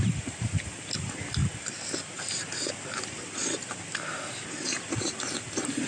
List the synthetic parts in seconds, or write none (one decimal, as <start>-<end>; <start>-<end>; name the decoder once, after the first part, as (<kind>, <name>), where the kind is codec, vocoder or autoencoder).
0.0-1.4 (vocoder, BigVGAN v2); 4.8-5.9